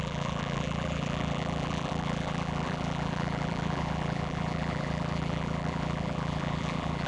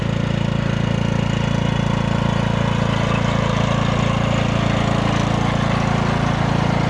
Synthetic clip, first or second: first